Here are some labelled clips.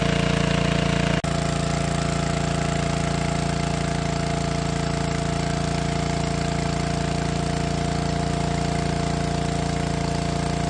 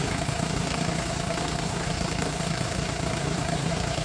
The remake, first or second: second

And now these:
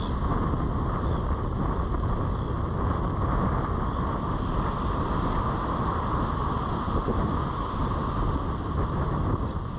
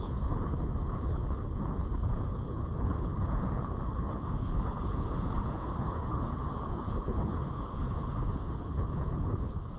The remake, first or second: second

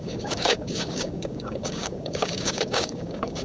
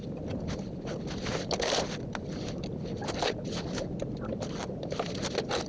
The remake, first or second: first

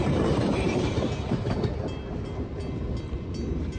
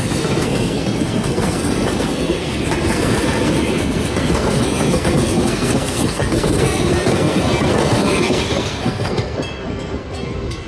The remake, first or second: second